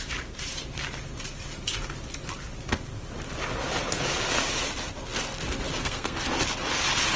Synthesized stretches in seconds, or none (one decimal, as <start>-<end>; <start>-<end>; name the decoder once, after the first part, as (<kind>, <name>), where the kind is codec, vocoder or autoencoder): 5.8-6.3 (codec, SNAC)